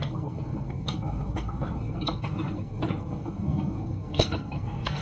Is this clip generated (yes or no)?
yes